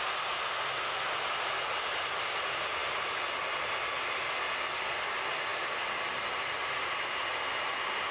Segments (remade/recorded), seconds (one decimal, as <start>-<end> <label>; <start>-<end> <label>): 0.0-8.1 recorded